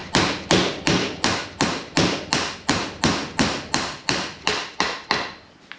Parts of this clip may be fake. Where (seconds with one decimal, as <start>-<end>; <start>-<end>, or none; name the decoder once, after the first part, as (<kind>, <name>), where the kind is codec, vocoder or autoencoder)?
none